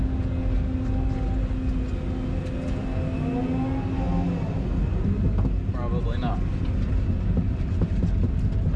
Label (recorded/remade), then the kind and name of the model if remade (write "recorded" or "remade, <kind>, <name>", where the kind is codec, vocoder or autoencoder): recorded